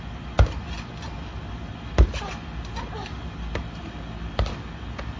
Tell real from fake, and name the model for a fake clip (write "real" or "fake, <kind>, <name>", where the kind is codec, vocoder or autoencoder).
real